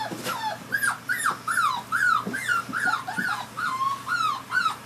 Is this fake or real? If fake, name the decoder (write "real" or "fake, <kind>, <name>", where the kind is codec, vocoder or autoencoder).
real